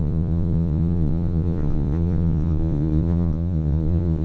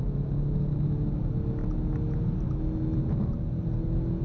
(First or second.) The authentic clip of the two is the second